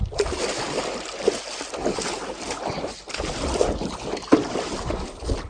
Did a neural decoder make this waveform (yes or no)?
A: no